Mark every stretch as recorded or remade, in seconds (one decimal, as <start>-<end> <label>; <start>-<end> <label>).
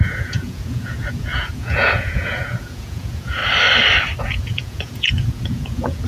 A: 0.0-3.4 remade; 3.4-4.2 recorded; 4.2-6.1 remade